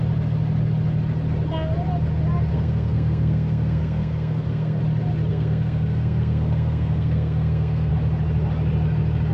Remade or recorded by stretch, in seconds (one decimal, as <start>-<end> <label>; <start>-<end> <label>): 0.0-2.5 recorded; 2.5-4.8 remade; 4.8-5.3 recorded; 5.3-7.9 remade; 7.9-9.3 recorded